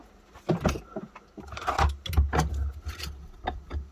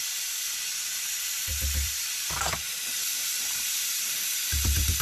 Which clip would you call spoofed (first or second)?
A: second